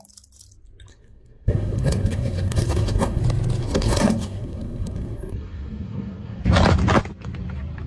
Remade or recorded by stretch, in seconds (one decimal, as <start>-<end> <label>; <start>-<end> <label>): 0.0-0.9 recorded; 0.9-3.2 remade; 3.2-3.6 recorded; 3.6-6.4 remade; 6.4-7.9 recorded